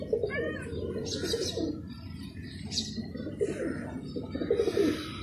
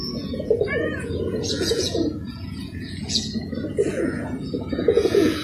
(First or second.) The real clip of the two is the first